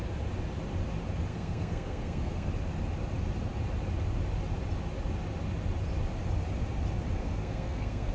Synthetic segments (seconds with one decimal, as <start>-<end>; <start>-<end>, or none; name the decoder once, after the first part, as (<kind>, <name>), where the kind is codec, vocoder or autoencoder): 1.3-2.5 (codec, SNAC); 7.2-8.1